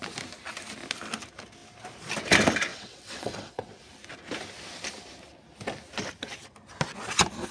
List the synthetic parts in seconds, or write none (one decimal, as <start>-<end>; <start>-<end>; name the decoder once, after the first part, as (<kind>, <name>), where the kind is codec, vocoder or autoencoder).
2.7-3.8 (vocoder, WaveNeXt)